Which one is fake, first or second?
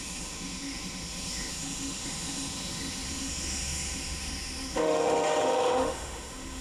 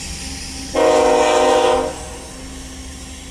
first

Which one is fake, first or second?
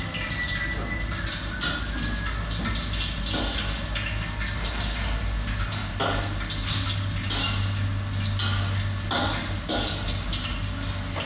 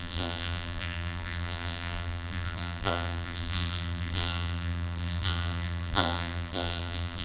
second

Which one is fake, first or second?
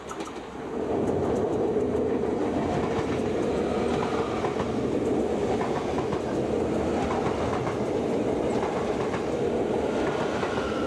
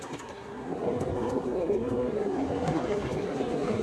second